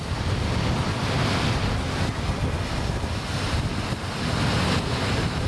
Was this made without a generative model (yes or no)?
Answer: yes